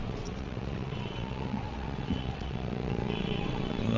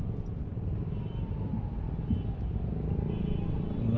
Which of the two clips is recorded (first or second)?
second